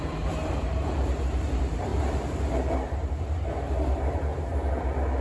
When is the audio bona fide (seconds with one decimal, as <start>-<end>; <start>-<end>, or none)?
none